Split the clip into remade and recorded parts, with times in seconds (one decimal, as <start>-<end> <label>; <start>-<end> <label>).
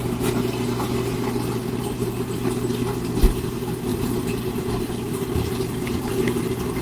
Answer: 0.0-3.9 recorded; 3.9-6.1 remade; 6.1-6.8 recorded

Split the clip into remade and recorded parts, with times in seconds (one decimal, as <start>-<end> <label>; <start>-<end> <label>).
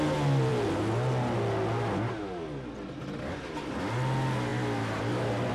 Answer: 0.0-5.5 recorded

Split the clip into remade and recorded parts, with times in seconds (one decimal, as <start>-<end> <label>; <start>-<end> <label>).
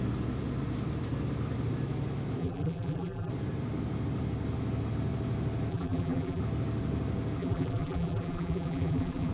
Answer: 0.0-2.4 recorded; 2.4-3.3 remade; 3.3-5.7 recorded; 5.7-6.4 remade; 6.4-7.4 recorded; 7.4-9.3 remade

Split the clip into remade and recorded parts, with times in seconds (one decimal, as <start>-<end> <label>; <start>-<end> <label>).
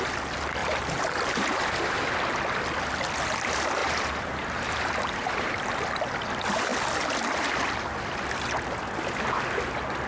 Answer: 0.0-0.6 recorded; 0.6-1.6 remade; 1.6-3.8 recorded; 3.8-5.7 remade; 5.7-10.1 recorded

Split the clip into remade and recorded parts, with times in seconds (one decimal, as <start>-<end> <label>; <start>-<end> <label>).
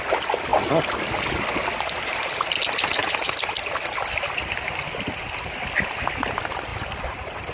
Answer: 0.0-3.0 recorded; 3.0-5.3 remade; 5.3-6.7 recorded; 6.7-7.5 remade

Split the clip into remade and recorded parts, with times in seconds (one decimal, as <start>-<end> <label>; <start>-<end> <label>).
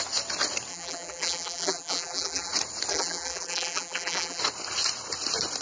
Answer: 0.0-0.7 recorded; 0.7-2.5 remade; 2.5-2.9 recorded; 2.9-4.4 remade; 4.4-5.6 recorded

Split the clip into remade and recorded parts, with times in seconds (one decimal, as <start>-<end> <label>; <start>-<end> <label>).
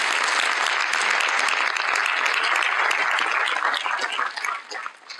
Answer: 0.0-5.2 recorded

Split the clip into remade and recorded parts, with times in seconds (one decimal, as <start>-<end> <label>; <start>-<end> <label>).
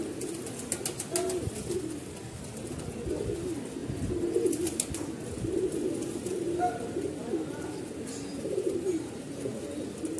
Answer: 0.0-8.3 recorded; 8.3-9.1 remade; 9.1-10.2 recorded